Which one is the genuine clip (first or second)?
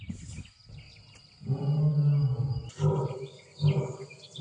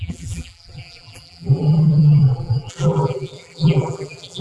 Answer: first